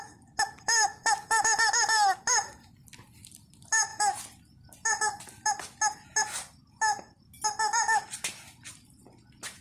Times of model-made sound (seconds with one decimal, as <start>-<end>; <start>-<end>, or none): none